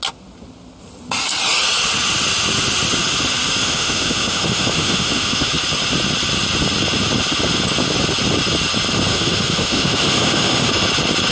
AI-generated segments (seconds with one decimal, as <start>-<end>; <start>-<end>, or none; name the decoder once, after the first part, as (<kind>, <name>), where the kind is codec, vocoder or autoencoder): 3.6-5.5 (autoencoder, DAC-VAE); 9.1-10.7